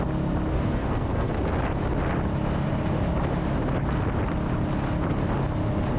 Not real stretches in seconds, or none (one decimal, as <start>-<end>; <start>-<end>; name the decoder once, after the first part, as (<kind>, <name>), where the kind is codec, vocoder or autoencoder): 0.5-1.3 (codec, SNAC)